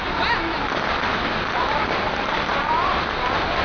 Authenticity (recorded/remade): recorded